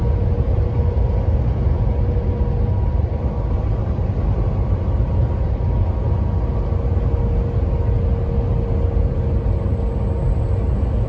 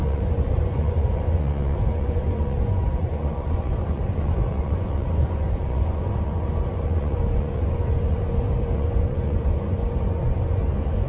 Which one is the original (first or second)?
first